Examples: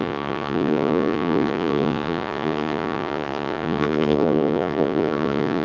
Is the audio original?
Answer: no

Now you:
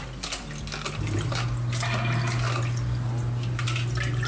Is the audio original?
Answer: yes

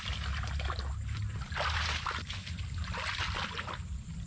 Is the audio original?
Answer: yes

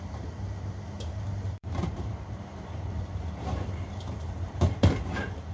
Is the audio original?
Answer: no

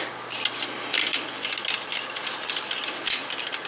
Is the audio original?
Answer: yes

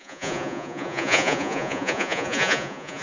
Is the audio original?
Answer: no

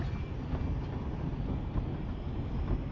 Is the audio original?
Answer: yes